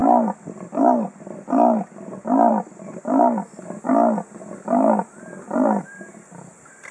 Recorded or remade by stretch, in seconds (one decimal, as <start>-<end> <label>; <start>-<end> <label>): 0.0-6.9 recorded